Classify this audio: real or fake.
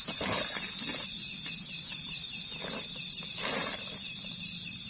real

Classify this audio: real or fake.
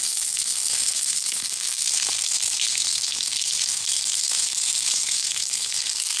fake